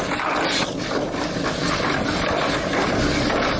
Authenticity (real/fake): real